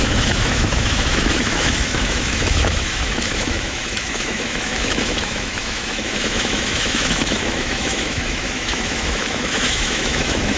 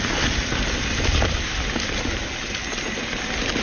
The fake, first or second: first